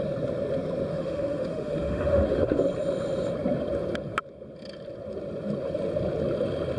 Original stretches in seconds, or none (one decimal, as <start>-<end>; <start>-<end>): 0.0-0.9; 2.6-6.8